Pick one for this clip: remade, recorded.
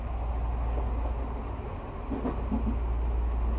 recorded